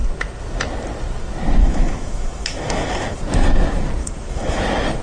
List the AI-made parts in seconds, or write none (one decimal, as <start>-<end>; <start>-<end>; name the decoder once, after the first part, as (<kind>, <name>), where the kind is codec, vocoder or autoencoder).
1.6-3.2 (autoencoder, DAC-VAE); 4.0-4.6